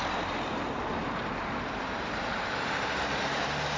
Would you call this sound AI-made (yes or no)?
yes